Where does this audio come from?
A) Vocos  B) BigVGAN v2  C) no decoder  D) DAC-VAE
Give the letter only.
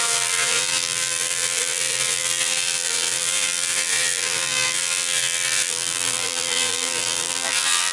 B